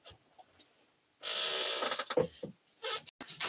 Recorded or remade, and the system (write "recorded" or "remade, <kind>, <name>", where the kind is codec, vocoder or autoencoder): recorded